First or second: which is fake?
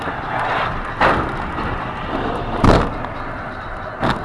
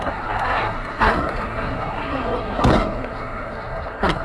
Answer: second